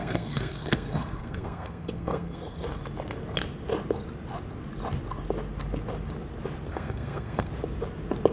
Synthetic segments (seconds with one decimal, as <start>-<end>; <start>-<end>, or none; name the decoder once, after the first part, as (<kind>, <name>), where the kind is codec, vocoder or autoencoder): 0.0-2.8 (codec, SNAC); 6.7-7.5